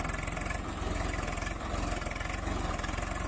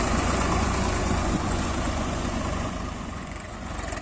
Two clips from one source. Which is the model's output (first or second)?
second